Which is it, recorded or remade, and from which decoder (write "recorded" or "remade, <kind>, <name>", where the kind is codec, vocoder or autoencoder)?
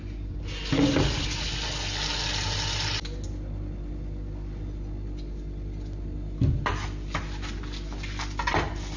recorded